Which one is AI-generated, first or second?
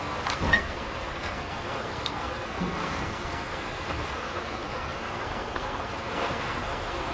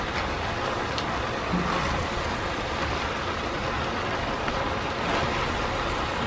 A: first